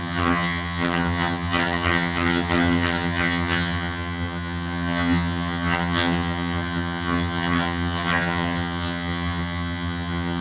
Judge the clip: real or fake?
fake